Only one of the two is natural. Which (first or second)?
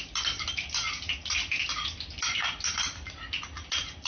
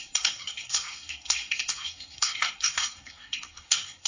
first